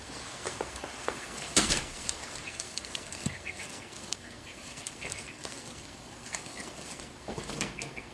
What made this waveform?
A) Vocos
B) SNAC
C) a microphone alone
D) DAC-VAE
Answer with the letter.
B